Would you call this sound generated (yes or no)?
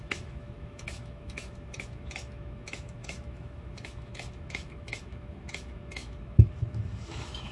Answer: yes